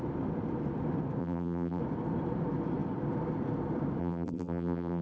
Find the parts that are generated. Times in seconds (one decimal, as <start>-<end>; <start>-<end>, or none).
1.2-1.8; 4.0-5.0